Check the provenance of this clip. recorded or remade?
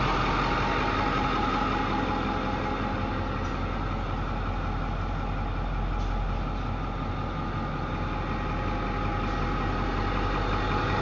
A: recorded